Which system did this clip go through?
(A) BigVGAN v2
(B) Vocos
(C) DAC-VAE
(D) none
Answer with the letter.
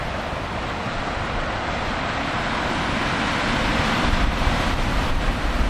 D